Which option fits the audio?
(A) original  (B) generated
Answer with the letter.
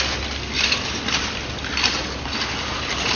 A